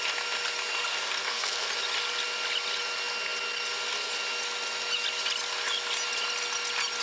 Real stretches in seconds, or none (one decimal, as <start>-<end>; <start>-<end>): 0.0-0.9; 1.7-7.0